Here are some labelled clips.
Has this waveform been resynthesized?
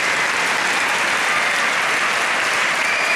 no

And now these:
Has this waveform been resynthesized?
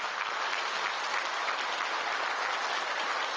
no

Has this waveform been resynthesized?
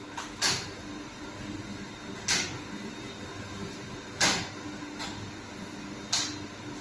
no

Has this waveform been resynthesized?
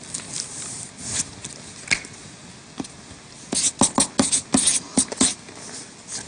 no